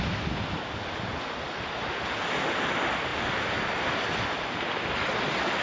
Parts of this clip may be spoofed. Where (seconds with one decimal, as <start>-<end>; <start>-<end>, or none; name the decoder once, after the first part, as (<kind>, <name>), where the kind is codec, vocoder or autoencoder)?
none